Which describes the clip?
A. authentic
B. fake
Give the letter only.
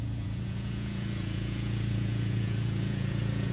B